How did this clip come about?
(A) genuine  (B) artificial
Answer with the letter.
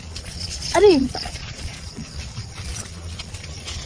B